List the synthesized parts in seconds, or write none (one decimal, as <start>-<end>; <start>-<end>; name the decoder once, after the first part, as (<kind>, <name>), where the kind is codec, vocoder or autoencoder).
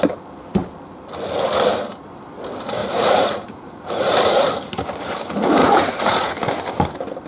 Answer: 2.8-4.5 (vocoder, Vocos); 5.6-6.3